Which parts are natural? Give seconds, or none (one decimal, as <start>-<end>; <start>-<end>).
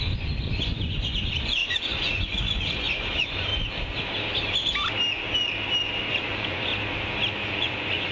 3.5-6.1; 6.7-7.5